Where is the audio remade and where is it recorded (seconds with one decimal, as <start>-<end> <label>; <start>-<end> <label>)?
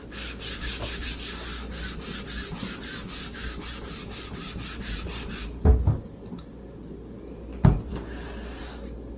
0.0-9.2 recorded